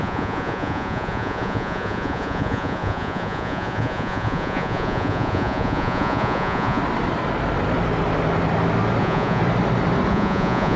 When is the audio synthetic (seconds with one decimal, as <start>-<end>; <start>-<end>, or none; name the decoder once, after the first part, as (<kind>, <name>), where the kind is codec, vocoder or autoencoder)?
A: 0.0-6.8 (vocoder, Vocos); 9.0-9.4; 10.1-10.8